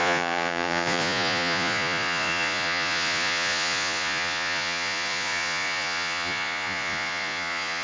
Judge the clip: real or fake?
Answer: fake